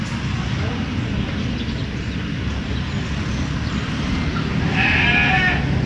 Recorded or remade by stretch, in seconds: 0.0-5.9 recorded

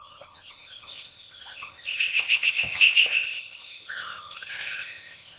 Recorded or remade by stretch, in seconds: 0.0-5.4 remade

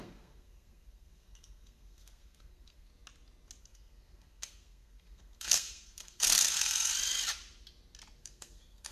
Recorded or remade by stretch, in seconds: 0.0-2.9 remade; 2.9-3.6 recorded; 3.6-6.9 remade; 6.9-8.2 recorded; 8.2-8.9 remade